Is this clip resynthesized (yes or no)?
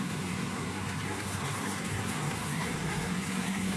yes